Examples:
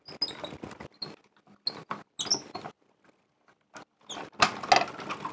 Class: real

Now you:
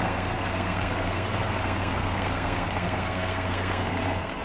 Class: fake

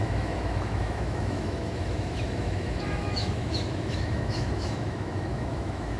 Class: fake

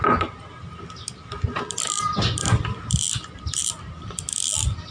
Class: real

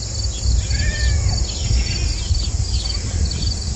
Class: real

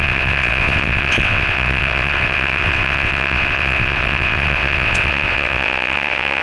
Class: fake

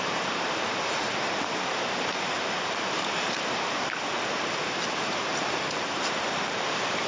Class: fake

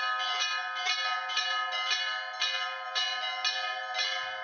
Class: real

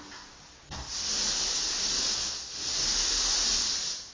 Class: real